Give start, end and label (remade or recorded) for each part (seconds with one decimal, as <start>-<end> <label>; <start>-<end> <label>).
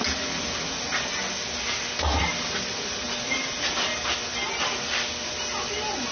0.0-6.1 recorded